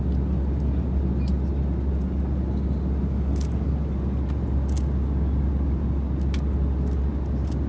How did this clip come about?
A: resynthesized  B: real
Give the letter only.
B